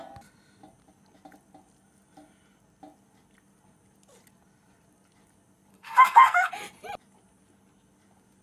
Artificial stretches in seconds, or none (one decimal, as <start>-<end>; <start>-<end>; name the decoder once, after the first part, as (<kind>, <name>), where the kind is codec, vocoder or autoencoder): 5.7-6.5 (codec, SNAC)